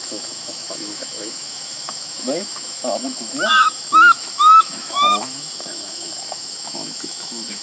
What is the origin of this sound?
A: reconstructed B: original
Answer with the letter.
A